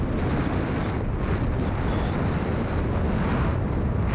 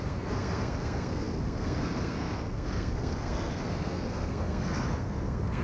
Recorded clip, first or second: first